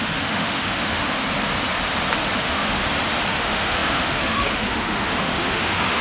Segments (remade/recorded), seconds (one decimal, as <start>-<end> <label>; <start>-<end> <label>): 0.0-1.2 remade; 1.2-2.4 recorded; 2.4-2.8 remade; 2.8-3.3 recorded; 3.3-6.0 remade